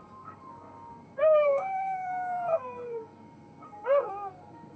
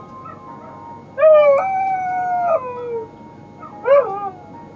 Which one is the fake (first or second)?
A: first